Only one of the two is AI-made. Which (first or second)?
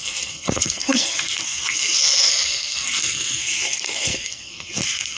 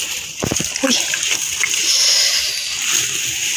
first